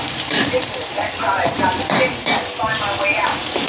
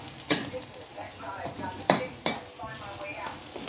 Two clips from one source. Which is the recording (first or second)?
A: second